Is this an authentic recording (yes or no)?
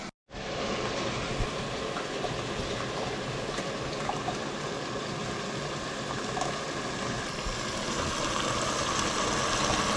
yes